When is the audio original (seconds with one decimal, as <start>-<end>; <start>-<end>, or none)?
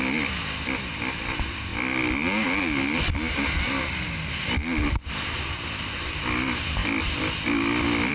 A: 0.0-8.1